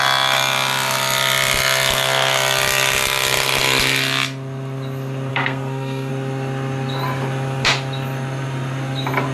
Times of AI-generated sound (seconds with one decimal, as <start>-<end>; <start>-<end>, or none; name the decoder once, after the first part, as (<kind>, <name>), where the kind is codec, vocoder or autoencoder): 5.3-6.1 (codec, SNAC)